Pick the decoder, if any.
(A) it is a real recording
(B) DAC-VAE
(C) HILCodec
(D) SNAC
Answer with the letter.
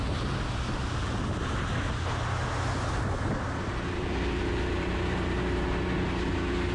A